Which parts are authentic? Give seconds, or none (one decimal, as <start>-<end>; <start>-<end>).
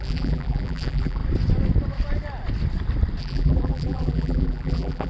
1.2-3.2